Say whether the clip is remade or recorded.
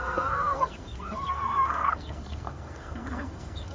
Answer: remade